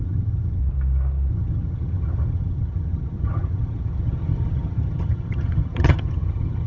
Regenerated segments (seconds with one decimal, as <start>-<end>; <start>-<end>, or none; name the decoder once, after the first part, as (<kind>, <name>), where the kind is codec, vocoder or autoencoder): 0.0-0.6 (vocoder, HiFi-GAN); 1.3-6.7